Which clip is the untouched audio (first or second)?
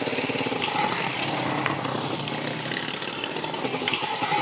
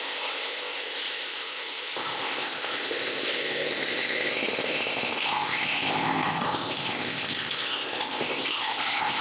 first